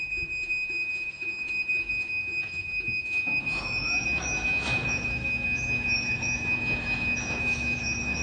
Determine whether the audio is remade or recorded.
remade